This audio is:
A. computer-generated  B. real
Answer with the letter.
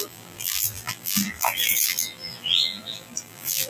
A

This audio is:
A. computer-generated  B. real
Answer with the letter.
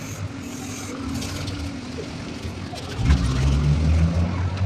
B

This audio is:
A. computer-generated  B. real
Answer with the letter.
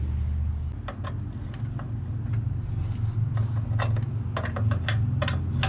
B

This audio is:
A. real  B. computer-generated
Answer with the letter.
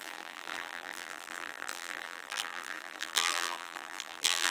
B